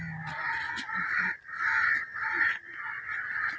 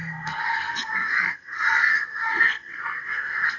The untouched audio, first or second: first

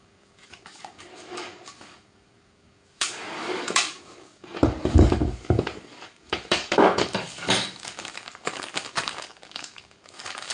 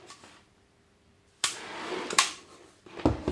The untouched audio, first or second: second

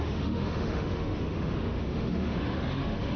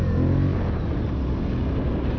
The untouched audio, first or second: second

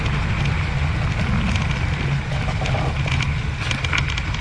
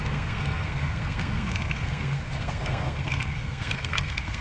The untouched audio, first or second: first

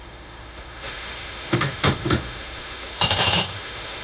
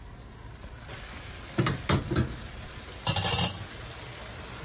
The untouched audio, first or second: second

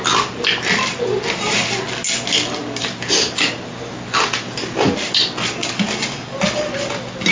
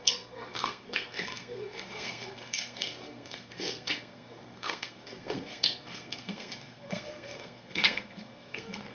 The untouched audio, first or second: first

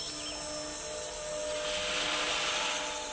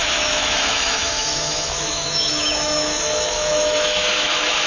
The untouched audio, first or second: first